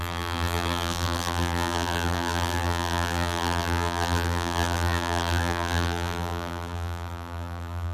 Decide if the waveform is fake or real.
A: fake